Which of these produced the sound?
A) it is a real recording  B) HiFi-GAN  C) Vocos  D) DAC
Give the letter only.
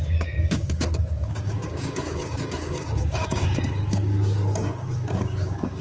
D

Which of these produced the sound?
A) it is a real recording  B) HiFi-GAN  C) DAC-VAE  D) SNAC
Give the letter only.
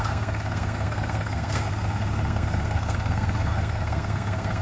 D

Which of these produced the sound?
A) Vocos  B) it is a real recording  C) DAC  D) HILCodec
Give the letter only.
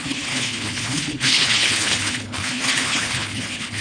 D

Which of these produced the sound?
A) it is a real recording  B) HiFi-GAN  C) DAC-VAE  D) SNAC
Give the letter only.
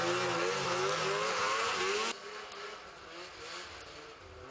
A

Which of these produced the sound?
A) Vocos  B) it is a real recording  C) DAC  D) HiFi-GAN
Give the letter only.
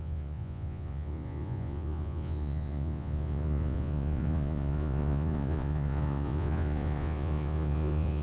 A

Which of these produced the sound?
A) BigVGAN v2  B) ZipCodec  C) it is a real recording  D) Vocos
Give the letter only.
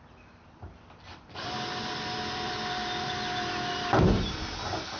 A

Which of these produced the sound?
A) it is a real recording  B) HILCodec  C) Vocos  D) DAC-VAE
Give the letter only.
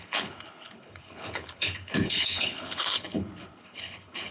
B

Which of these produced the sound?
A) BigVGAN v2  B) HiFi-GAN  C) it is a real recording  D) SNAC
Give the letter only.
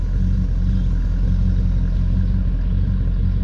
C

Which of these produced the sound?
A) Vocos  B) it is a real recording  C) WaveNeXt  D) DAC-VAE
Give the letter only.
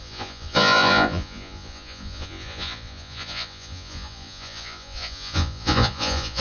A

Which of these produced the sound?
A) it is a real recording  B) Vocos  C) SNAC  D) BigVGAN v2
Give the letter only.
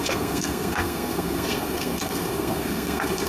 C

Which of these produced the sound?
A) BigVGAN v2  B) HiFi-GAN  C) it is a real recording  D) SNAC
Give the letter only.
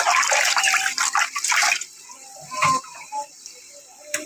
C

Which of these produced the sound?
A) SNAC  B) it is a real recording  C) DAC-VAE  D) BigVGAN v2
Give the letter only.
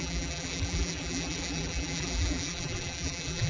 D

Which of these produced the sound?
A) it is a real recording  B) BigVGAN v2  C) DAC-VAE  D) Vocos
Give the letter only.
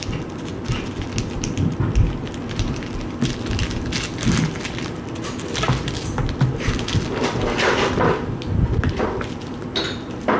A